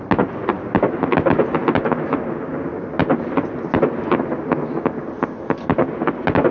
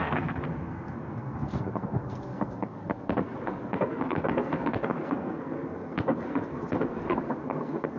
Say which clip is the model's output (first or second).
second